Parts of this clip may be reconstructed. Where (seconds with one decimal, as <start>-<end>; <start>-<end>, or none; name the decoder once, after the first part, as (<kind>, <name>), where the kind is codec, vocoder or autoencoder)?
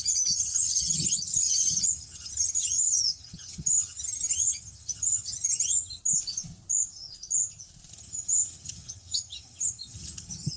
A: 0.0-6.0 (vocoder, HiFi-GAN); 7.9-10.6